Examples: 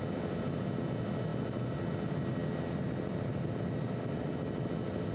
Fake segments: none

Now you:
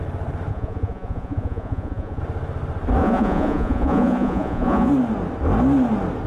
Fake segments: 0.5-2.2 (vocoder, Vocos); 3.0-4.9

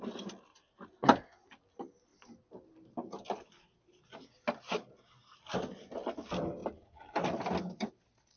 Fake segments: none

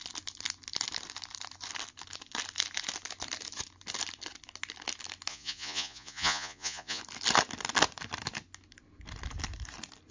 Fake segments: 5.3-7.0 (vocoder, Vocos)

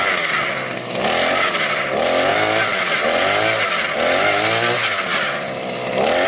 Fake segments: none

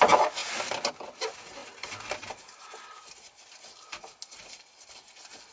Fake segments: none

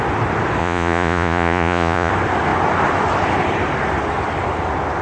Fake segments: 0.6-2.1 (vocoder, Vocos)

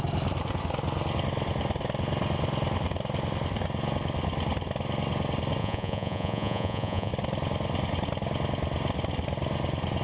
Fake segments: 5.6-7.1 (vocoder, Vocos)